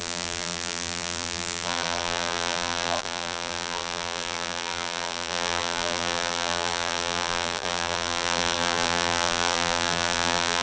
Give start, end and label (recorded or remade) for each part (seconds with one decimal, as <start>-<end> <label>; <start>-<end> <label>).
0.0-10.6 remade